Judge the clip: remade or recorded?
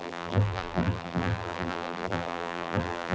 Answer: remade